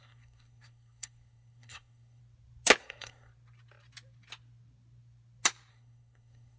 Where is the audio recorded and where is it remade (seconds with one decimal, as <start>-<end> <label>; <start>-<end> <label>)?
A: 0.0-2.2 remade; 2.2-2.8 recorded; 2.8-3.3 remade; 3.3-5.7 recorded; 5.7-6.6 remade